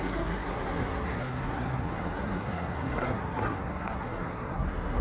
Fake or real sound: fake